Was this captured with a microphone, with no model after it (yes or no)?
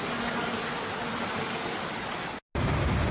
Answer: yes